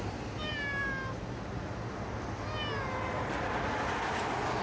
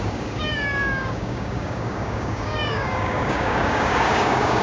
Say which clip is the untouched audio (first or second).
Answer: first